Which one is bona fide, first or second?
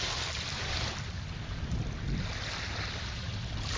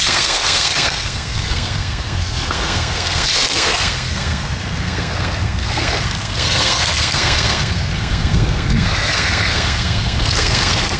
first